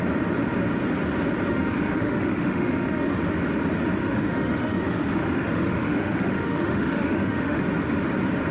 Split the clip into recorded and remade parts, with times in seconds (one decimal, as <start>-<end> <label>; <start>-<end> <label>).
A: 0.0-1.5 recorded; 1.5-3.2 remade; 3.2-4.0 recorded; 4.0-7.6 remade; 7.6-8.5 recorded